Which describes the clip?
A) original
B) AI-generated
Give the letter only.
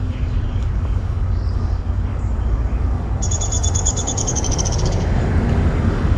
B